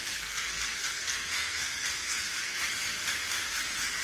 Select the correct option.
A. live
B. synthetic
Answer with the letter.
B